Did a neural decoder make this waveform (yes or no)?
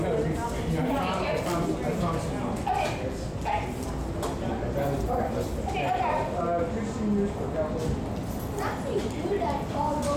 no